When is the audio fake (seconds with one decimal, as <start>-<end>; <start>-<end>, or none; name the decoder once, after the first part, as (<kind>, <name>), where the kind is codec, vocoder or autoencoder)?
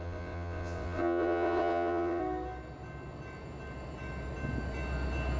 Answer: 0.0-2.2 (vocoder, WaveNeXt)